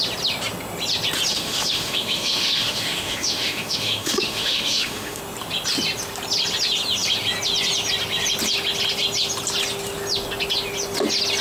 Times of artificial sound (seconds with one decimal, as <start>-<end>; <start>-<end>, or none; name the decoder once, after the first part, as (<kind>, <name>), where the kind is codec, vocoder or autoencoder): 1.3-5.2 (autoencoder, DAC-VAE)